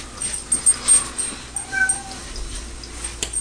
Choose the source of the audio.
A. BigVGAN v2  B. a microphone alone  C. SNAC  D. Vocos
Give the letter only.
B